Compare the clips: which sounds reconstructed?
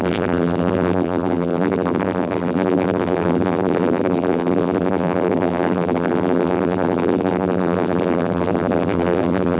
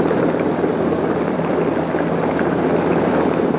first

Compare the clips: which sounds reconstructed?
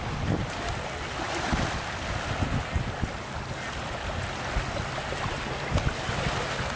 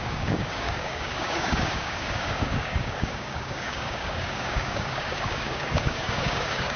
second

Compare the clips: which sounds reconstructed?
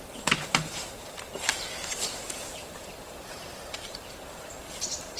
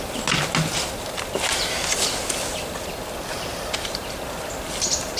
first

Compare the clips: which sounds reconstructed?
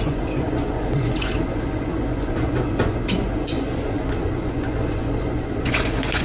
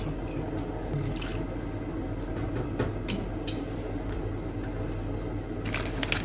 first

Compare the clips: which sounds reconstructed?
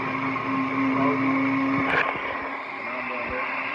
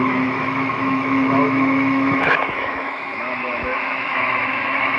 second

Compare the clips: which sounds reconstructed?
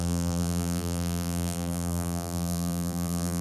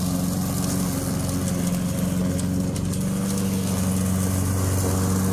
first